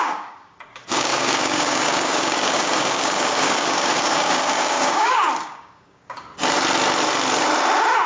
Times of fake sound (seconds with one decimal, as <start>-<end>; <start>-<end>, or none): 0.0-6.3